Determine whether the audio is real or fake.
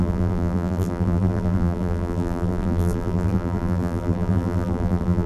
fake